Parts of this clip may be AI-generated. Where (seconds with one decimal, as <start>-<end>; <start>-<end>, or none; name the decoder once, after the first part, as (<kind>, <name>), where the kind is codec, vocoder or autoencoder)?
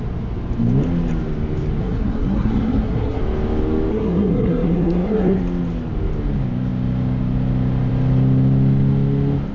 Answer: 1.8-3.2 (codec, SNAC); 3.9-5.4